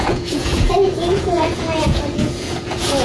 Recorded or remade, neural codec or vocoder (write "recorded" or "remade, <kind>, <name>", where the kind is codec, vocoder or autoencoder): remade, vocoder, Vocos